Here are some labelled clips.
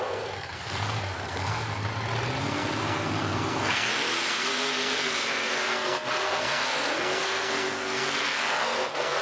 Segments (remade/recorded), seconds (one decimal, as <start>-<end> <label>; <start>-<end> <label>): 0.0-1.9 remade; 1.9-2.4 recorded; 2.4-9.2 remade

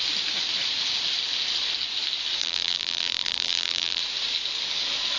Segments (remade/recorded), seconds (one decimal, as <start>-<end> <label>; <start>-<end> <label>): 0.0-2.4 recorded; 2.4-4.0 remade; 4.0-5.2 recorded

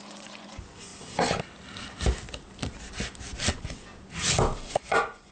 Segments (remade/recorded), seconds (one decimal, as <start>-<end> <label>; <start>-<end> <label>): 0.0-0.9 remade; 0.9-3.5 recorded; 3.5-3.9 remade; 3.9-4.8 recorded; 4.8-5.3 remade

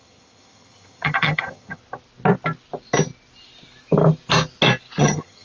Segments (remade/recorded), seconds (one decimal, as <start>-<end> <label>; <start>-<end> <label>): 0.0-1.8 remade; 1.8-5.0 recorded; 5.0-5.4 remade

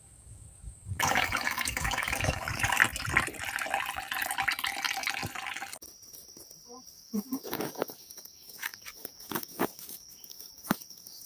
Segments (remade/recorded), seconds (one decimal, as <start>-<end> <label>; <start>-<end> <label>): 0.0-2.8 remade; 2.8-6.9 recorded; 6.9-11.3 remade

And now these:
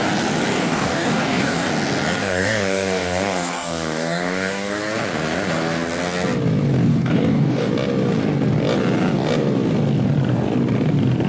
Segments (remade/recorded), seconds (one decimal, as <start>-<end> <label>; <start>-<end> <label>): 0.0-0.5 recorded; 0.5-1.7 remade; 1.7-2.2 recorded; 2.2-4.8 remade; 4.8-6.9 recorded; 6.9-7.7 remade; 7.7-11.3 recorded

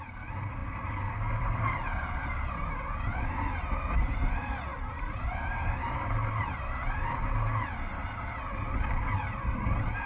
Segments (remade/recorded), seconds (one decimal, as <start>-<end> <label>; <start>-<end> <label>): 0.0-0.6 recorded; 0.6-2.5 remade; 2.5-10.1 recorded

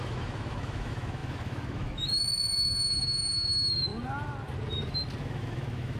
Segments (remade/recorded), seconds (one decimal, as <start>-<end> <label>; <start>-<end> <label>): 0.0-3.9 remade; 3.9-5.2 recorded; 5.2-6.0 remade